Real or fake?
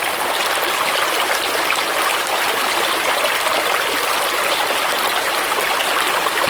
real